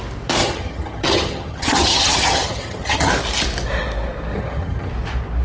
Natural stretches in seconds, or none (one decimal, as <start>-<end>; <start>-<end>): 0.0-0.4; 3.1-4.3; 4.9-5.4